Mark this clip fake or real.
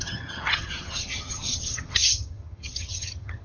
fake